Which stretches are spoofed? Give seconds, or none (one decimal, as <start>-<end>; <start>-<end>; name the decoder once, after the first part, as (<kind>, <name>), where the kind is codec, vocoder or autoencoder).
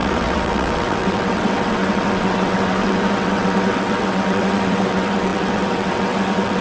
0.0-6.6 (vocoder, WaveNeXt)